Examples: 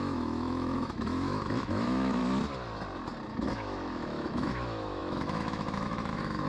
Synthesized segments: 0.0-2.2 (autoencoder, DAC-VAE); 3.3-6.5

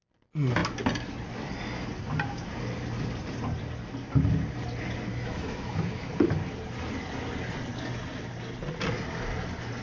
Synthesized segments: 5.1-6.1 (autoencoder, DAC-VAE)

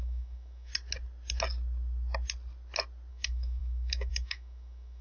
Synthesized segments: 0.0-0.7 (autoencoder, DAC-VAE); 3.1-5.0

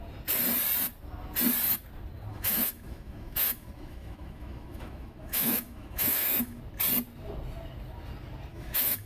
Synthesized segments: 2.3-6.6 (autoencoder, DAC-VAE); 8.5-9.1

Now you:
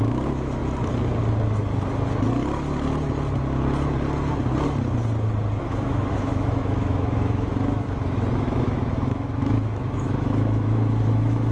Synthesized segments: 0.0-0.6 (autoencoder, DAC-VAE); 5.6-11.5

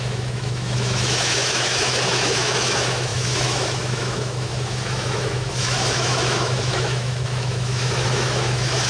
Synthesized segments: 0.0-8.9 (autoencoder, DAC-VAE)

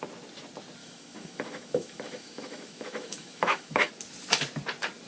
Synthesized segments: 0.8-3.9 (autoencoder, DAC-VAE)